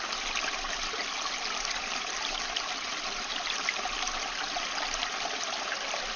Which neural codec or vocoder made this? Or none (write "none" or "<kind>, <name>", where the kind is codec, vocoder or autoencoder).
none